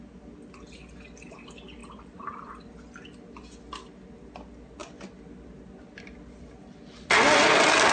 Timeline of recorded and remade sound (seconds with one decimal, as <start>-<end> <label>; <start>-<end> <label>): 0.0-1.8 recorded; 1.8-2.5 remade; 2.5-7.9 recorded